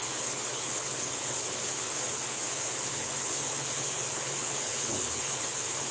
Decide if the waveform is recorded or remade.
remade